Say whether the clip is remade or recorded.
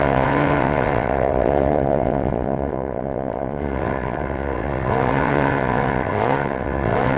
remade